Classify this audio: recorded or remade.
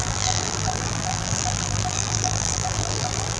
remade